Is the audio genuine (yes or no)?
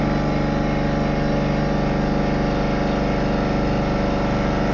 yes